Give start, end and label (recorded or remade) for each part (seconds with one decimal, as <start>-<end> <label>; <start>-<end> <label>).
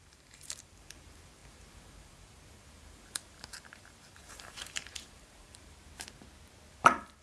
0.0-5.9 remade; 5.9-6.7 recorded; 6.7-7.2 remade